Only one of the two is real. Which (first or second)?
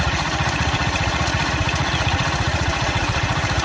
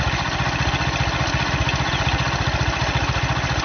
second